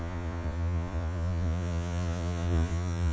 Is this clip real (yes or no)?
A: no